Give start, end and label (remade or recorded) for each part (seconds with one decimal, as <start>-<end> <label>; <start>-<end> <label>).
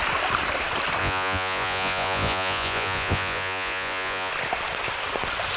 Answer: 0.0-1.0 recorded; 1.0-4.3 remade; 4.3-5.6 recorded